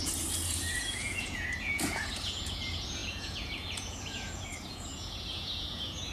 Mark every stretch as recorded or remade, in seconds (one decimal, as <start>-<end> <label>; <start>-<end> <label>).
0.0-6.1 remade